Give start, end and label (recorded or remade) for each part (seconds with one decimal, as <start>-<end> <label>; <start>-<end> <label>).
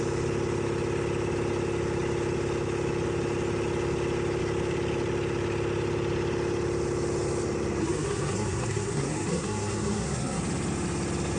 0.0-7.8 recorded; 7.8-10.4 remade; 10.4-11.4 recorded